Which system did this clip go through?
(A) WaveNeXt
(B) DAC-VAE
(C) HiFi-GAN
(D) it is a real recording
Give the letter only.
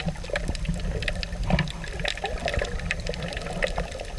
D